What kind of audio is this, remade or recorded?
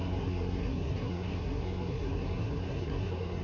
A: remade